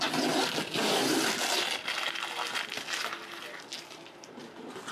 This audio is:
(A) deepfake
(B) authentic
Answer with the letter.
B